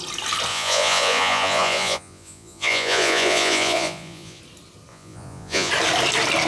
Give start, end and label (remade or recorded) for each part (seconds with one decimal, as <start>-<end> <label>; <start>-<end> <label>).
0.0-0.5 recorded; 0.5-4.4 remade; 4.4-4.9 recorded; 4.9-5.7 remade; 5.7-6.5 recorded